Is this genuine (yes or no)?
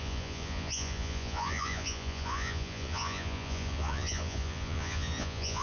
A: no